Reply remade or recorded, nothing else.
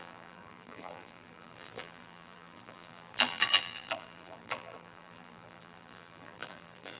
remade